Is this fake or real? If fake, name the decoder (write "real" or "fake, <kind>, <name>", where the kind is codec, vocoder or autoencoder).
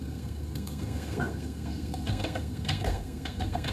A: fake, codec, SNAC